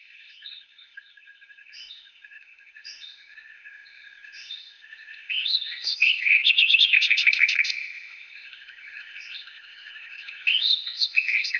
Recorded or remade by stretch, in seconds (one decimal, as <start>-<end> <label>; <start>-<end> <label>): 0.0-11.6 remade